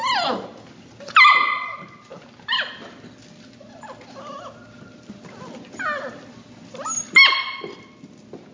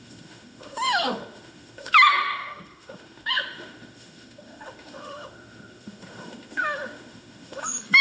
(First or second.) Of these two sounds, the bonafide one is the first